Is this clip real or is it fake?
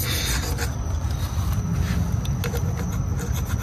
real